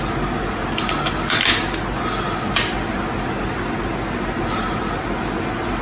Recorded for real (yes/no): yes